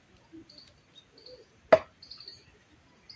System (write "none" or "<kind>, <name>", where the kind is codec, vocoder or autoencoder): none